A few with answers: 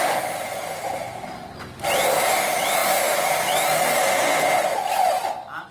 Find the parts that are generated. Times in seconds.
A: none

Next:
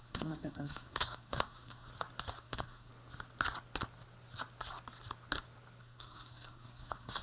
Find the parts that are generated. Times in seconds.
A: 0.0-1.9 (codec, SNAC); 2.4-2.9; 5.8-7.2

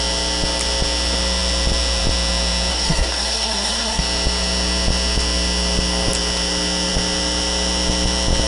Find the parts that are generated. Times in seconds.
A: 2.7-4.0 (codec, SNAC)

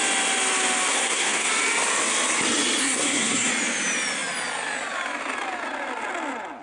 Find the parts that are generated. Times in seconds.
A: 0.9-1.5 (codec, SNAC); 2.8-3.5

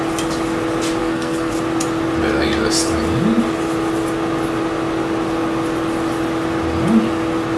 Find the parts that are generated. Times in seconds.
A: 1.0-1.5 (codec, SNAC)